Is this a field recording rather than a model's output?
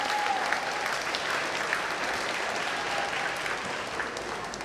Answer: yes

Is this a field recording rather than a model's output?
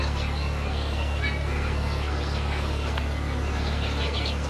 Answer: no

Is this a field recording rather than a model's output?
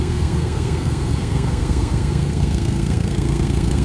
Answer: no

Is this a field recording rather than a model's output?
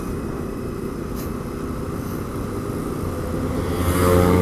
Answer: yes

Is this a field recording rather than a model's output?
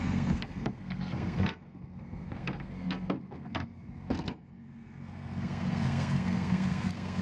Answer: no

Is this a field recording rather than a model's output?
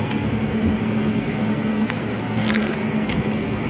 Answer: no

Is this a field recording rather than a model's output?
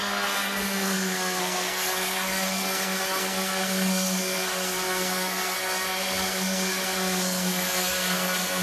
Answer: no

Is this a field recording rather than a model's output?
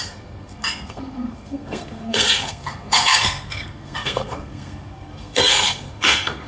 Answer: no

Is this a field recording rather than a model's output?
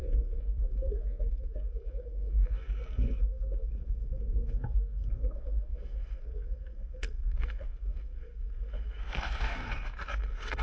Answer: no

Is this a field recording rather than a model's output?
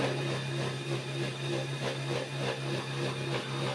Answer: yes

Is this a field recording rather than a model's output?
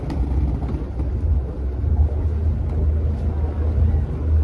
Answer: yes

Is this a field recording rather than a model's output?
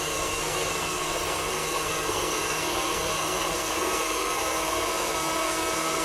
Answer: no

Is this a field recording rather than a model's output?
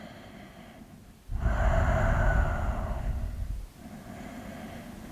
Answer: yes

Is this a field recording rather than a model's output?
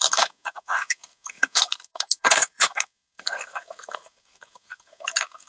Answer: no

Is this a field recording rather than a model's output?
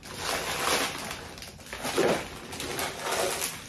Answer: yes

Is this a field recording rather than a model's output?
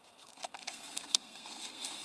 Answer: no